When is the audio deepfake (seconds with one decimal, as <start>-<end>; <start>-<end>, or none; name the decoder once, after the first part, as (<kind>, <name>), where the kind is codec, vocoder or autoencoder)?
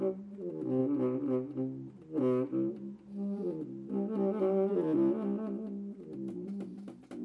none